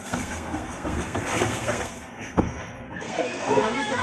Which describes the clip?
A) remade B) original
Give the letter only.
A